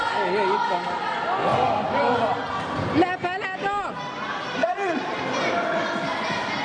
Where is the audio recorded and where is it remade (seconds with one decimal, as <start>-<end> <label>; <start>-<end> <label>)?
0.0-4.6 recorded; 4.6-5.2 remade; 5.2-6.6 recorded